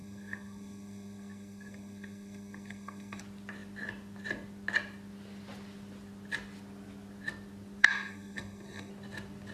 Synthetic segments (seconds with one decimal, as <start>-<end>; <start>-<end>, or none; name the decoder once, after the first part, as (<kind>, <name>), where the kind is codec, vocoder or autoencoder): 0.0-3.2 (codec, SNAC); 7.8-8.9